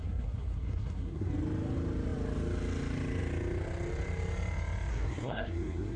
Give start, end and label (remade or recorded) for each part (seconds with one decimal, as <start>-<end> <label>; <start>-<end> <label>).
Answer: 0.0-1.3 remade; 1.3-4.9 recorded; 4.9-6.0 remade